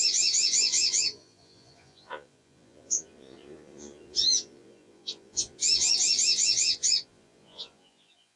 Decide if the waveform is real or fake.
fake